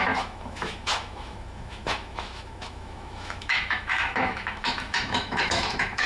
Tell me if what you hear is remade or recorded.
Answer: remade